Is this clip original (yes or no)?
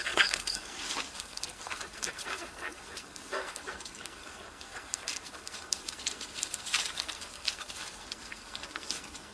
no